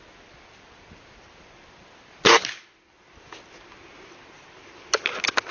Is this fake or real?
real